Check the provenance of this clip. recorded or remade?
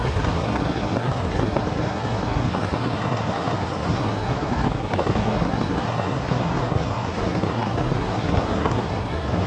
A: remade